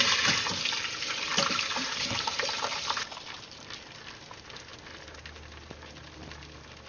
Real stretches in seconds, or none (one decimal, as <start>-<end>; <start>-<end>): 0.0-1.3; 3.6-6.9